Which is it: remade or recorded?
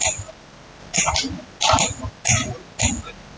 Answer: recorded